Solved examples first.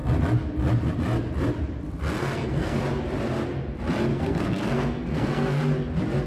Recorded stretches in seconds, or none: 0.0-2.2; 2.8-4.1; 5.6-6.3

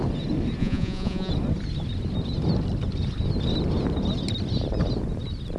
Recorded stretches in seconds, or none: 0.0-0.6; 1.3-5.6

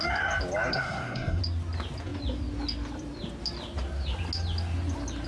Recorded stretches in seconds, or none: 0.0-0.7; 1.4-5.3